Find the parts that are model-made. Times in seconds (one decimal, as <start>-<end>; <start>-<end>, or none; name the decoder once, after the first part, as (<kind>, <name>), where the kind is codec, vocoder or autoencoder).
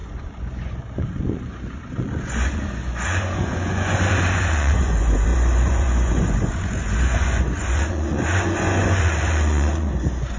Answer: 0.0-10.4 (vocoder, Vocos)